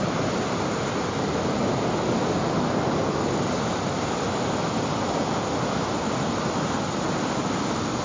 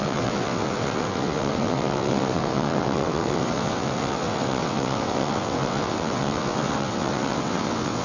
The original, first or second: first